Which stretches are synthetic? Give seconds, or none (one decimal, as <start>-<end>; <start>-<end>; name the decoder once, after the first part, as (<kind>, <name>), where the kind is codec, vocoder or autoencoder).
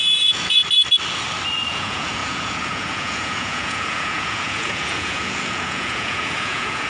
0.0-0.6 (vocoder, Vocos); 1.7-6.9